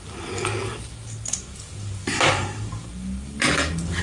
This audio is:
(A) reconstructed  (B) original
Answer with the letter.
B